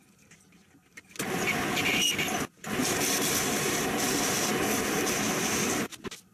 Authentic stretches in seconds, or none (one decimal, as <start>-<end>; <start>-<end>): 0.0-6.3